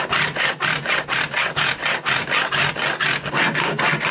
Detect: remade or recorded recorded